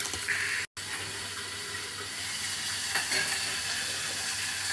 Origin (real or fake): real